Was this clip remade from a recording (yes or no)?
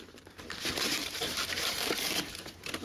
yes